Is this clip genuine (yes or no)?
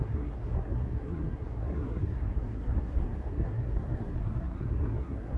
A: no